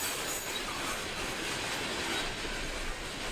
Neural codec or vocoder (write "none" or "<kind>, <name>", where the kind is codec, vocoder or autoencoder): none